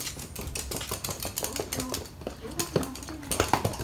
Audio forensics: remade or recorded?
recorded